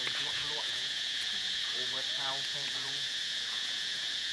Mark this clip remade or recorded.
remade